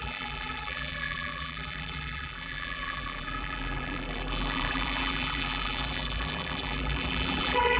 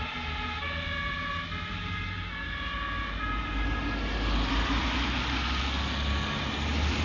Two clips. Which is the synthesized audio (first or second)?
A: first